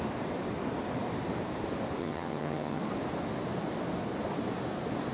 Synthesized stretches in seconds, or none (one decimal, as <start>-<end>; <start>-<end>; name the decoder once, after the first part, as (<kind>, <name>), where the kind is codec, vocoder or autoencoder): 2.0-2.8 (vocoder, HiFi-GAN)